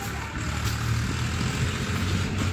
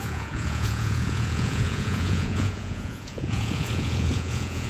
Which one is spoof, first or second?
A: second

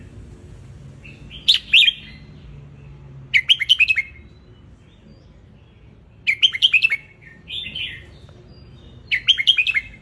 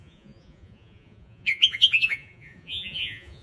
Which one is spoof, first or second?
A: second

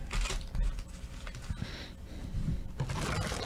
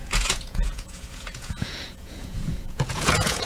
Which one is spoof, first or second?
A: second